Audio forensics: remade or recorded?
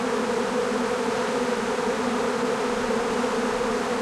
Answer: recorded